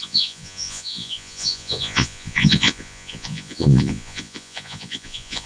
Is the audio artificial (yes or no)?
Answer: yes